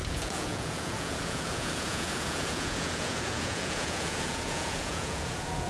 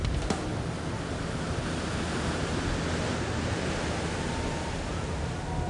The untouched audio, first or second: second